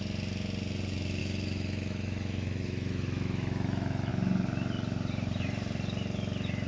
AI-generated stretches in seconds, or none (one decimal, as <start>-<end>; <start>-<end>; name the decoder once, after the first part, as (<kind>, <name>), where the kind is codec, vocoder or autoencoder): 1.2-4.1 (autoencoder, DAC-VAE)